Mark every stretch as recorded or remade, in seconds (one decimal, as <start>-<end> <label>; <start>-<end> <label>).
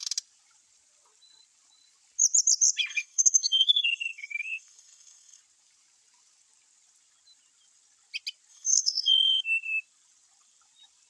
0.0-2.9 recorded; 2.9-5.4 remade; 5.4-8.5 recorded; 8.5-9.4 remade; 9.4-11.1 recorded